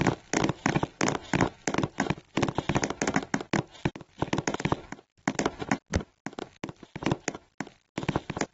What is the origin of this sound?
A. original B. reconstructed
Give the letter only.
A